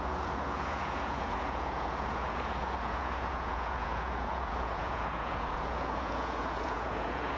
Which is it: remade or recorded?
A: remade